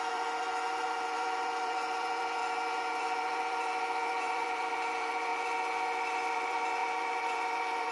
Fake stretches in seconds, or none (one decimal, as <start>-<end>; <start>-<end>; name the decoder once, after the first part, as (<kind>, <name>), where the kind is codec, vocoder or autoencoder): 0.0-2.4 (vocoder, BigVGAN v2); 2.9-5.3; 6.3-7.9